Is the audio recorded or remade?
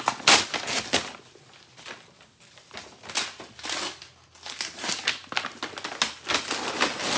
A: recorded